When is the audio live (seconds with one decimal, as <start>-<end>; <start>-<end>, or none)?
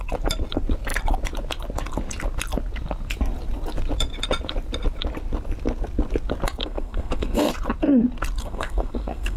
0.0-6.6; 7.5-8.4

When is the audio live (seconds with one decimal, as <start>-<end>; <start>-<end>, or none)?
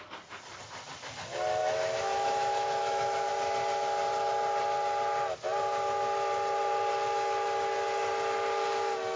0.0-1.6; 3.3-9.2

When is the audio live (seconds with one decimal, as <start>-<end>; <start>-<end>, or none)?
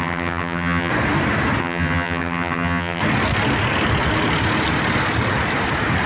0.9-1.6; 3.0-6.1